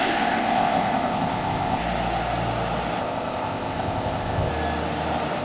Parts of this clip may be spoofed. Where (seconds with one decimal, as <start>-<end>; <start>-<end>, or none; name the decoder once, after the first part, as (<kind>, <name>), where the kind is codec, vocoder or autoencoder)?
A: 0.0-1.8 (codec, ZipCodec); 3.0-4.5